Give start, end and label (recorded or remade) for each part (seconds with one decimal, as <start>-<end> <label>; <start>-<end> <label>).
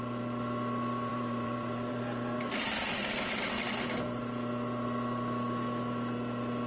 0.0-1.1 recorded; 1.1-3.4 remade; 3.4-6.7 recorded